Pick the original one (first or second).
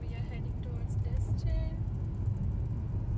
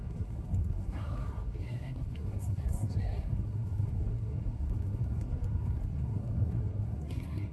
first